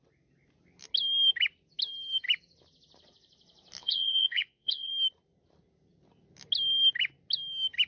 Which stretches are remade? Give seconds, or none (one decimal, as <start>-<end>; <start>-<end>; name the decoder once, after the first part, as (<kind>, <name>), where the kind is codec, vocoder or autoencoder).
3.8-4.9 (vocoder, Vocos)